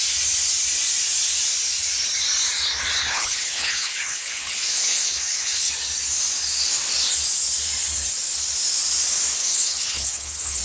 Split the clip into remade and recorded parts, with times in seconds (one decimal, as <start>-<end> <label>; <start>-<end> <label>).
0.0-3.0 recorded; 3.0-5.7 remade; 5.7-9.4 recorded; 9.4-10.6 remade